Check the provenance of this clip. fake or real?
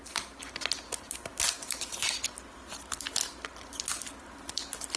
real